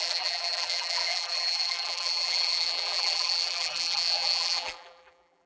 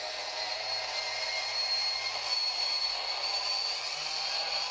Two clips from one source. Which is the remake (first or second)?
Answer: first